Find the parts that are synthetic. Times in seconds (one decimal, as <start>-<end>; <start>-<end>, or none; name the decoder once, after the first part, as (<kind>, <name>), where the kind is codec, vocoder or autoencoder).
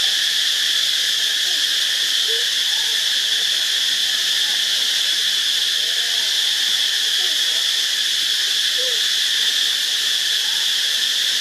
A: none